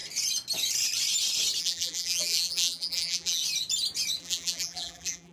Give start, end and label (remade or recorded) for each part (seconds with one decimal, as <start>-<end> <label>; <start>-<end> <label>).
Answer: 0.0-1.6 recorded; 1.6-3.4 remade; 3.4-4.2 recorded; 4.2-5.3 remade